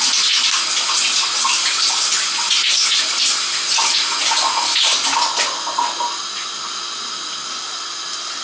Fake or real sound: real